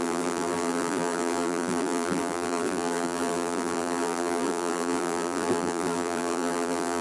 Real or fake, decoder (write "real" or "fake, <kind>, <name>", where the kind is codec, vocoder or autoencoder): fake, vocoder, BigVGAN v2